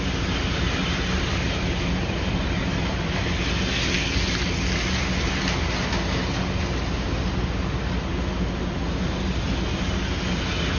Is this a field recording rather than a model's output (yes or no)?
yes